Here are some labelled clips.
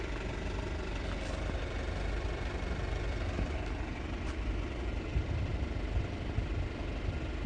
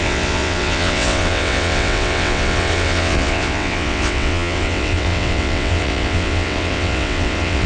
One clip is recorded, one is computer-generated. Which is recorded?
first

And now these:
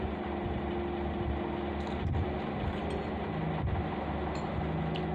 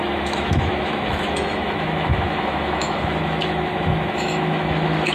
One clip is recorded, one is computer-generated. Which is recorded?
first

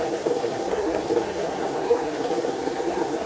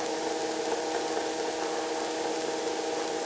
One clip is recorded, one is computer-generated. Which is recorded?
second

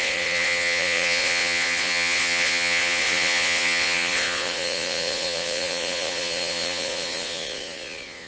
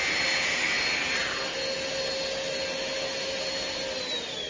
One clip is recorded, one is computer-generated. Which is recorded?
second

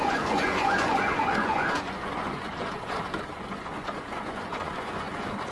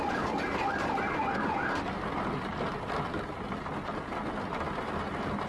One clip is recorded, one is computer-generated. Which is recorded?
second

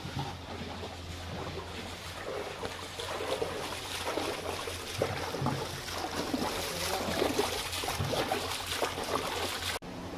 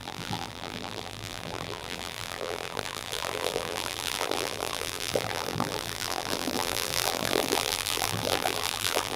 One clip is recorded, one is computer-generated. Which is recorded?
first